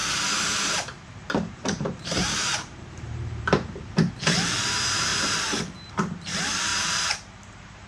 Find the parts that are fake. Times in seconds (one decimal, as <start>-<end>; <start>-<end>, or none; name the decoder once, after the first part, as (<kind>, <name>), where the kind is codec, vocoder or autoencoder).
0.0-3.9 (vocoder, BigVGAN v2); 5.1-5.6; 6.7-7.9